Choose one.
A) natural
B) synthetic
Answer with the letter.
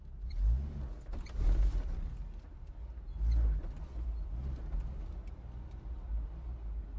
A